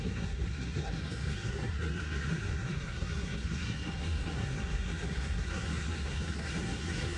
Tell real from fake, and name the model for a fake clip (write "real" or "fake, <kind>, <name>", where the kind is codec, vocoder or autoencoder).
fake, codec, SNAC